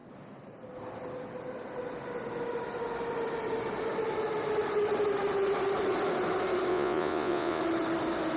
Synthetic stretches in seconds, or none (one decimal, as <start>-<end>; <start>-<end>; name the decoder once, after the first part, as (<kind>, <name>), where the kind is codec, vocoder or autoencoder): 6.7-7.6 (vocoder, Vocos)